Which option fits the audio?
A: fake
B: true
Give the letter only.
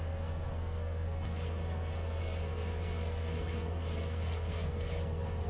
A